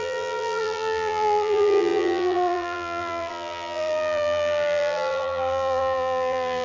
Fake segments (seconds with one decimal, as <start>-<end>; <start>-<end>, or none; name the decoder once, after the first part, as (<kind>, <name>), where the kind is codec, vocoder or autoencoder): 0.0-6.6 (vocoder, BigVGAN v2)